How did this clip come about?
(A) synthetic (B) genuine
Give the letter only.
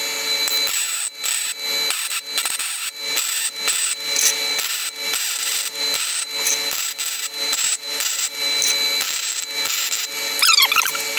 B